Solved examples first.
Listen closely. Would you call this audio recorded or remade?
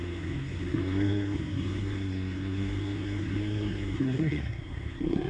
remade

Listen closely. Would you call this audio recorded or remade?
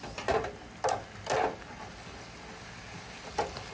recorded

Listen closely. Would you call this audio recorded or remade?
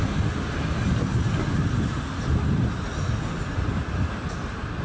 recorded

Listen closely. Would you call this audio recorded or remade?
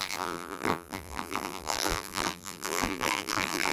remade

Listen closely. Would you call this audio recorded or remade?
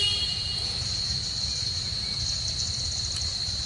remade